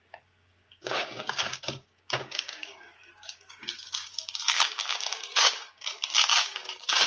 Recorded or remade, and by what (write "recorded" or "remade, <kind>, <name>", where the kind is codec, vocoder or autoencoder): remade, codec, DAC